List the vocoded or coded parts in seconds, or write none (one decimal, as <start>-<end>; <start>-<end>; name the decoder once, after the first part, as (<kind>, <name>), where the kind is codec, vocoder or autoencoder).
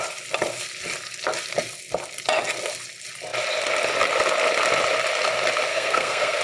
5.7-6.4 (codec, SNAC)